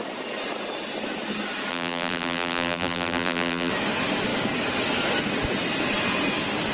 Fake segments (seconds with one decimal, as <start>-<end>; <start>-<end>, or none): 1.7-3.7